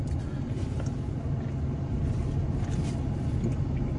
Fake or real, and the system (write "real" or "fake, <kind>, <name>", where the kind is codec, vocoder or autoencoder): real